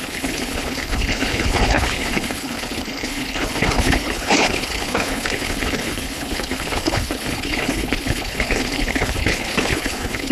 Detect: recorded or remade remade